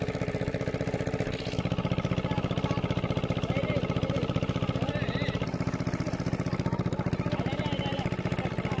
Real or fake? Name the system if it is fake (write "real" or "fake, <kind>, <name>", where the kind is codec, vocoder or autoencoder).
real